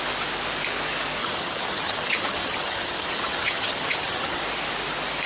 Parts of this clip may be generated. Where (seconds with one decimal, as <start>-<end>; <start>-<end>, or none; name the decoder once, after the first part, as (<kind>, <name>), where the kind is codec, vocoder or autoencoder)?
1.2-4.4 (vocoder, HiFi-GAN)